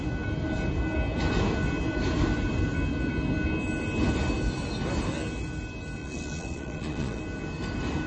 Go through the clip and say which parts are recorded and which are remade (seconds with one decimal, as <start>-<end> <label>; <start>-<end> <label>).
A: 0.0-6.0 recorded; 6.0-7.2 remade; 7.2-8.1 recorded

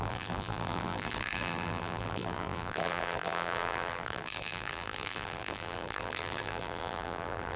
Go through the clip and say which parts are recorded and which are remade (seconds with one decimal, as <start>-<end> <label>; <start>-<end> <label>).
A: 0.0-7.6 remade

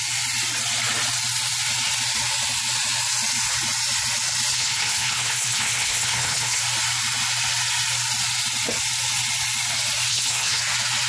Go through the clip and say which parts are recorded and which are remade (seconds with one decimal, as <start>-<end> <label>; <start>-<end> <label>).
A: 0.0-4.5 recorded; 4.5-6.6 remade; 6.6-10.1 recorded; 10.1-10.6 remade; 10.6-11.1 recorded

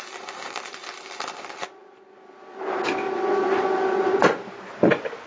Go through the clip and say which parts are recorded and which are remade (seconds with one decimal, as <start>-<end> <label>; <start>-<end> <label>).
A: 0.0-5.3 recorded

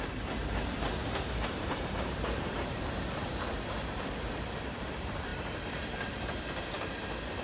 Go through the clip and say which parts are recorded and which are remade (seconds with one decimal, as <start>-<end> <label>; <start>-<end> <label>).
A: 0.0-7.4 remade

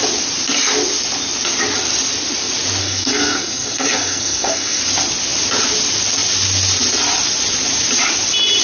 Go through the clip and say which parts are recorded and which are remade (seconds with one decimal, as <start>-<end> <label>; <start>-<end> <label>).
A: 0.0-2.8 recorded; 2.8-4.8 remade; 4.8-8.6 recorded

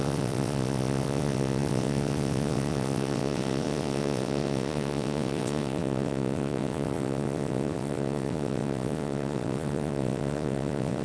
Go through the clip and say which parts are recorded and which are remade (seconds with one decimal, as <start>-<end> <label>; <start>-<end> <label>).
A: 0.0-11.0 remade